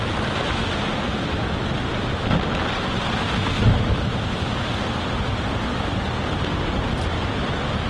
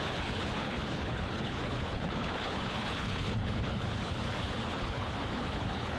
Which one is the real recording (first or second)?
first